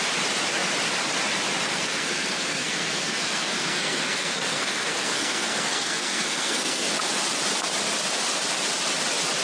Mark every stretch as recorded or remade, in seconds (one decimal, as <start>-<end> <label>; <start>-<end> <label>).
0.0-1.7 recorded; 1.7-6.9 remade; 6.9-9.4 recorded